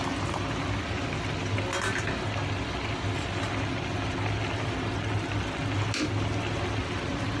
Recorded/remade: recorded